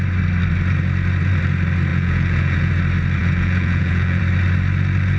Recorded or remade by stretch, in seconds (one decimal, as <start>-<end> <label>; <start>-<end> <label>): 0.0-1.9 recorded; 1.9-2.7 remade; 2.7-3.2 recorded; 3.2-4.2 remade; 4.2-5.2 recorded